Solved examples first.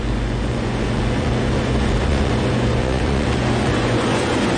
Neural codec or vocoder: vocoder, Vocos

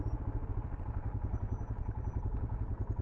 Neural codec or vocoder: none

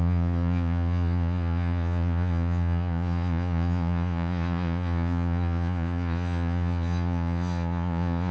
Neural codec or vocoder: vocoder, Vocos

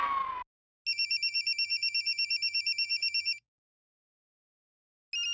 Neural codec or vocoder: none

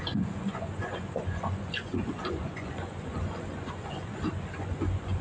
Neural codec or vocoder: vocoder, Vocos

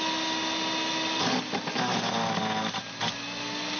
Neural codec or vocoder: none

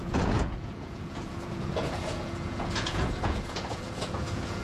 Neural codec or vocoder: vocoder, Vocos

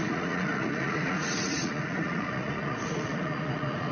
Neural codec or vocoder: vocoder, Vocos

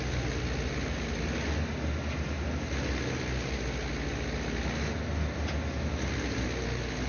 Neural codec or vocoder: none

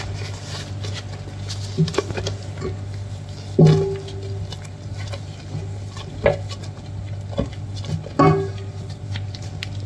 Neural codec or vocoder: none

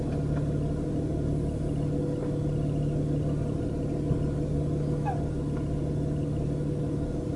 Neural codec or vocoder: none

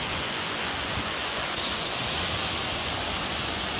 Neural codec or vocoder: vocoder, Vocos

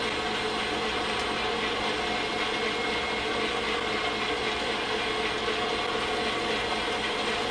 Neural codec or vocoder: none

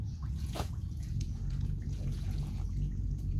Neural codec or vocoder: vocoder, Vocos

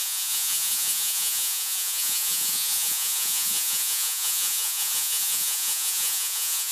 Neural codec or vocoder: vocoder, Vocos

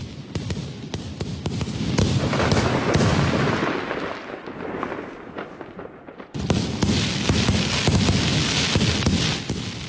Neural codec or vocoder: none